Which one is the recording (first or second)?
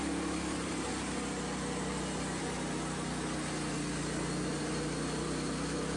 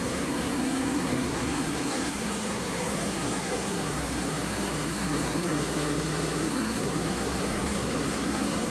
first